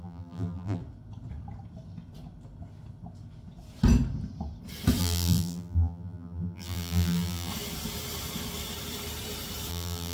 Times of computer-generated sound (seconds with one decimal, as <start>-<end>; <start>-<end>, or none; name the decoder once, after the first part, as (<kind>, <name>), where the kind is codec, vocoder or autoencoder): 0.0-0.8 (vocoder, BigVGAN v2); 5.0-7.5; 9.7-10.1